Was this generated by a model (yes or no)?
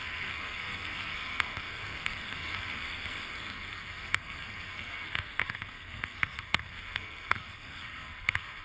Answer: yes